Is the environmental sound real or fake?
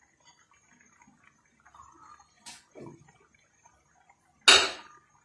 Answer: real